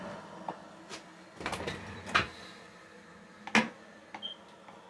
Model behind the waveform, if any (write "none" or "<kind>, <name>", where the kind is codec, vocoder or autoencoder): none